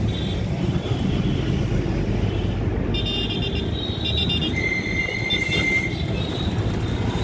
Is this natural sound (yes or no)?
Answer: yes